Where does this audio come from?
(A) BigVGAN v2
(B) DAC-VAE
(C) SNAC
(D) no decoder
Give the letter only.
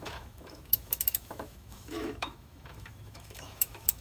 B